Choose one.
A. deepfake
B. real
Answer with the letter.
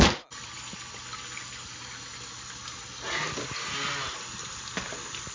B